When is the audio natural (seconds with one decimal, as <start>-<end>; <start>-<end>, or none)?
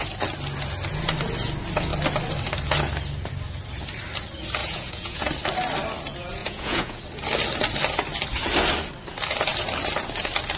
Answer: 0.0-4.6; 5.3-6.4; 7.0-10.6